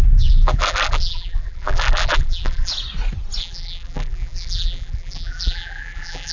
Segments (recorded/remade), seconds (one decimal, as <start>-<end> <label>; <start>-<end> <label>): 0.0-2.7 remade; 2.7-3.4 recorded; 3.4-6.3 remade